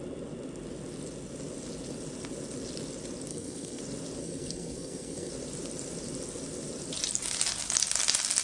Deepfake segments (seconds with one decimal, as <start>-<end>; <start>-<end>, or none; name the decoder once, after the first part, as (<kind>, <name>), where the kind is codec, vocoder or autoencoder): 3.3-3.8 (codec, SNAC); 4.2-5.3